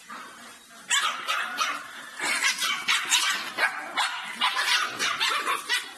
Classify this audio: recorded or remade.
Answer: recorded